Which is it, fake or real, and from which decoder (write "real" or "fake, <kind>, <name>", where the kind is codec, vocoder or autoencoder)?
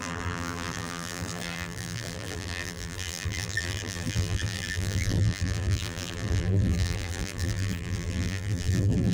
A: fake, vocoder, BigVGAN v2